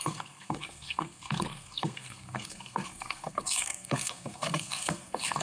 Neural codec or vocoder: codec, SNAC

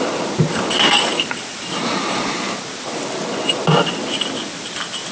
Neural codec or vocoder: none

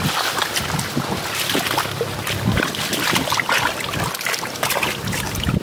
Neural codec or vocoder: none